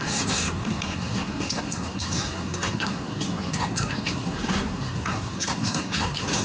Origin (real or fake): fake